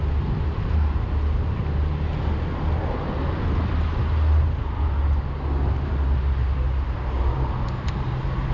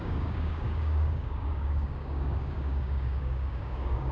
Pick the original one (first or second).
first